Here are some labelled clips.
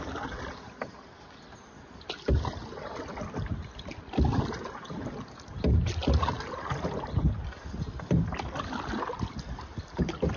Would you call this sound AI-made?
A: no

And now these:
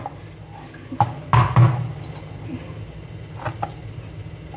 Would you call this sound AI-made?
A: no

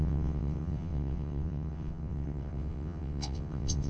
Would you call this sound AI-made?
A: yes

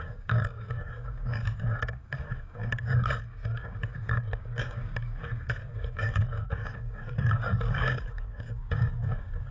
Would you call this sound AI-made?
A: yes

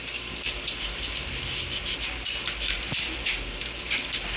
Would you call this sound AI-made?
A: yes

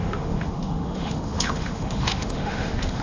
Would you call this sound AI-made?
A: yes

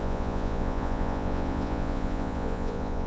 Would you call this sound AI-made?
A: yes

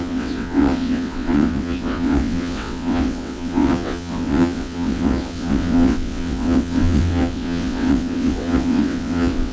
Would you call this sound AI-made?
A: yes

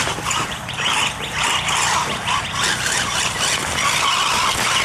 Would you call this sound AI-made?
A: no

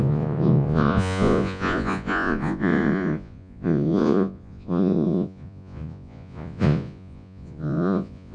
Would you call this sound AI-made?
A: yes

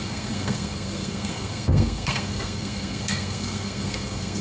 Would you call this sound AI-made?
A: yes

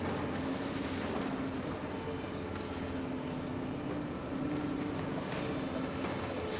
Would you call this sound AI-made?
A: no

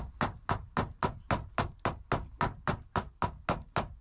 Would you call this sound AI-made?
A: no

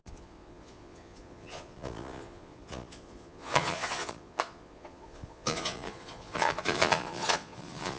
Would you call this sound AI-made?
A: yes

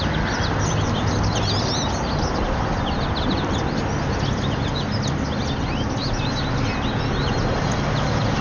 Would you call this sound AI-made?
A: no